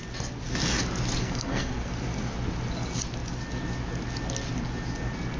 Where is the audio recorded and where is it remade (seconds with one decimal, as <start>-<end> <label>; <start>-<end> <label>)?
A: 0.0-1.2 recorded; 1.2-1.9 remade; 1.9-5.4 recorded